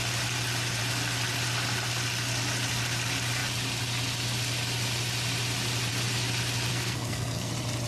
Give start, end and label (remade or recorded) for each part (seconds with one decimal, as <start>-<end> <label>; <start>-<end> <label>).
0.0-6.7 recorded; 6.7-7.5 remade; 7.5-7.9 recorded